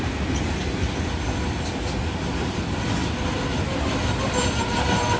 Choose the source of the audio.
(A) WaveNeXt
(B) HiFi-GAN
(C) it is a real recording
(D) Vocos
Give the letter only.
C